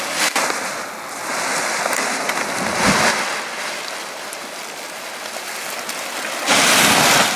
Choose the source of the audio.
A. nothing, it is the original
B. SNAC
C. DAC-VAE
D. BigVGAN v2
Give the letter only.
A